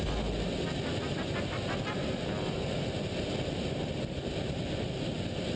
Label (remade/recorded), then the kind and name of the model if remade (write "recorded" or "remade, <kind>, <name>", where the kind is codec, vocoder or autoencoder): recorded